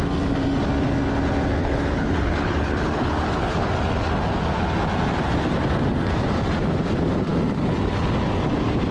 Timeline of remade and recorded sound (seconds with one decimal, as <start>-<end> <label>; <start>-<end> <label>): 0.0-1.6 recorded; 1.6-3.7 remade; 3.7-8.9 recorded